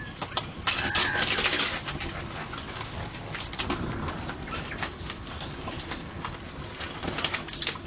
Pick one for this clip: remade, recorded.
remade